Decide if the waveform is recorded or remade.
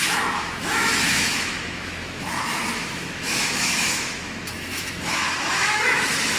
remade